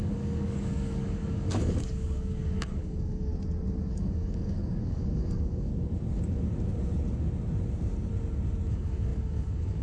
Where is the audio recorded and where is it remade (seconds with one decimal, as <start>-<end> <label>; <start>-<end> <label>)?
0.0-3.3 remade; 3.3-3.9 recorded; 3.9-5.7 remade; 5.7-8.7 recorded; 8.7-9.8 remade

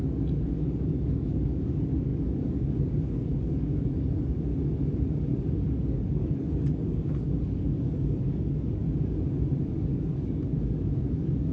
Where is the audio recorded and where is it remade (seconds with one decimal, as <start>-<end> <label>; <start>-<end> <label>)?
0.0-4.5 remade; 4.5-5.4 recorded; 5.4-8.8 remade; 8.8-9.7 recorded; 9.7-11.5 remade

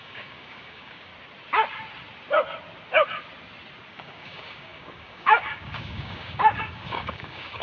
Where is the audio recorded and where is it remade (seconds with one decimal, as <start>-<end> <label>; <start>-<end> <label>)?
0.0-1.1 remade; 1.1-3.9 recorded; 3.9-7.6 remade